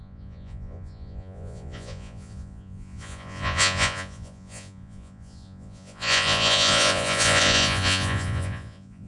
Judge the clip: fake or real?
fake